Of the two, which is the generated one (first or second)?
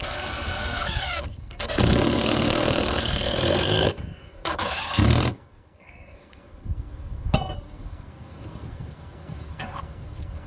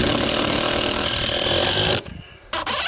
first